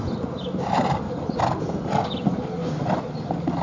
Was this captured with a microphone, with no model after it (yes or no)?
yes